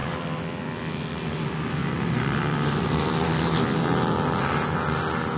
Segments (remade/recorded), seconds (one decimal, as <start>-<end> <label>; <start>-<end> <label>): 0.0-5.4 recorded